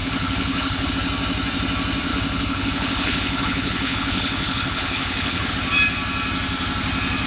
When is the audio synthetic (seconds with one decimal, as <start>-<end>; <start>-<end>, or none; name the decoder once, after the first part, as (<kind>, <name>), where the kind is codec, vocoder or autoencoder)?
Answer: 0.0-0.9 (codec, HILCodec); 2.1-5.5